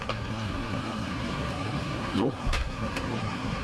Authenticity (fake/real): fake